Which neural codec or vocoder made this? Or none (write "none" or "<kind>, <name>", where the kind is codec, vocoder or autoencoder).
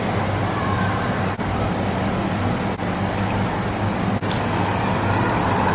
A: vocoder, BigVGAN v2